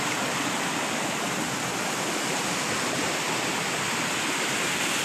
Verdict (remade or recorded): recorded